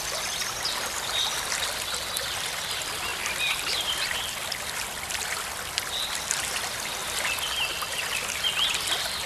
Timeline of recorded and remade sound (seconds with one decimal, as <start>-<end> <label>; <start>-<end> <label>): 0.0-3.1 recorded; 3.1-5.5 remade; 5.5-7.0 recorded; 7.0-8.0 remade; 8.0-9.3 recorded